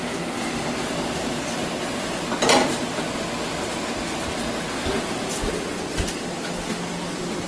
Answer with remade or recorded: recorded